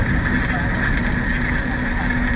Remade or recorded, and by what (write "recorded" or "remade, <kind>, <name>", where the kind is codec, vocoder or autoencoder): recorded